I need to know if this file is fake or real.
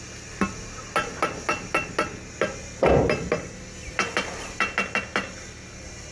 real